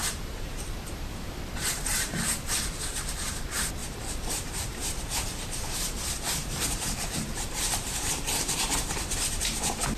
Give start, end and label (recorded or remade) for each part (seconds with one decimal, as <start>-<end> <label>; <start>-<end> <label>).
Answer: 0.0-10.0 remade